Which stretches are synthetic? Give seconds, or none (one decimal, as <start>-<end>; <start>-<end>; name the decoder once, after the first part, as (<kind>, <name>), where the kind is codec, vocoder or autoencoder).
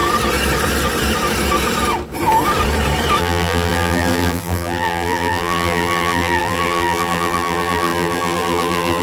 3.2-9.0 (vocoder, BigVGAN v2)